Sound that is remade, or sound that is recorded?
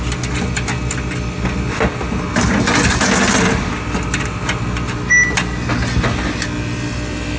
recorded